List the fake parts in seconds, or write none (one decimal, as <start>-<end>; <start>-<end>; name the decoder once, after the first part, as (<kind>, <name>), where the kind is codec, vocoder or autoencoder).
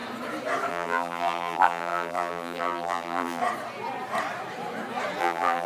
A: 0.7-3.4 (vocoder, BigVGAN v2); 5.2-5.7